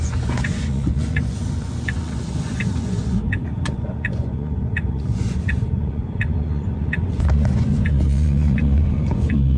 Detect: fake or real fake